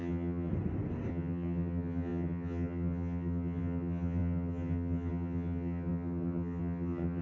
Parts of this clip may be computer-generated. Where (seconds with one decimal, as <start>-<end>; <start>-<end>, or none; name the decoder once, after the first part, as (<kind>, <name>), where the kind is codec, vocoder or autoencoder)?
0.0-0.5 (vocoder, HiFi-GAN); 1.1-7.2